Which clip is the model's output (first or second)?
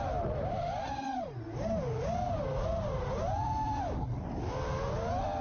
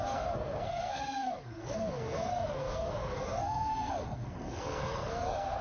second